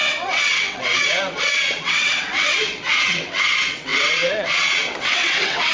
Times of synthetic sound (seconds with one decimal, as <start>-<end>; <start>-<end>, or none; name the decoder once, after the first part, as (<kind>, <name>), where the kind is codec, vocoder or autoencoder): 0.0-5.7 (vocoder, WaveNeXt)